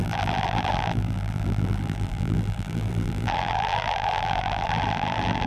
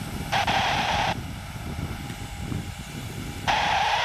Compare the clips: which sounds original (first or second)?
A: second